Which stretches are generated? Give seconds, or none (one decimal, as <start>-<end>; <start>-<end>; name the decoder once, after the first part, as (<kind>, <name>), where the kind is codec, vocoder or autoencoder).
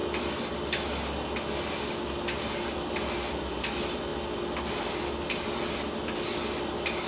none